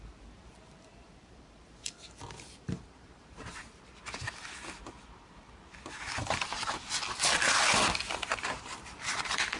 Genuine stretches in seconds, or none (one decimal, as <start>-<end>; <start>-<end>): 3.6-8.3